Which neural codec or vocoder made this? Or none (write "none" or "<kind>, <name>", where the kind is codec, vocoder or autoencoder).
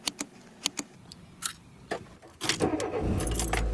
none